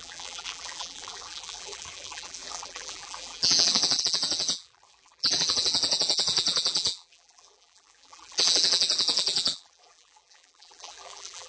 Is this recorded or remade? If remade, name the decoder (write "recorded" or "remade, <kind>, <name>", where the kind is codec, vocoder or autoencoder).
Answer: remade, vocoder, BigVGAN v2